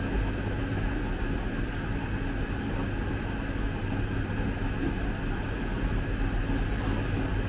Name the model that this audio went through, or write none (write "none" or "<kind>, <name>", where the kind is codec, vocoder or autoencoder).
none